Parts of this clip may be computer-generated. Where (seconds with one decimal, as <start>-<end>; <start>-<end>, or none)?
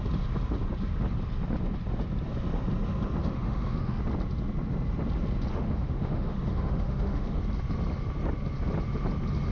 3.2-4.0; 5.5-7.4